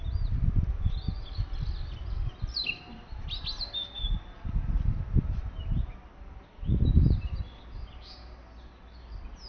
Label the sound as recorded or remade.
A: recorded